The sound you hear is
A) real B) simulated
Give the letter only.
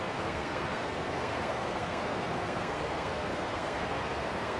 B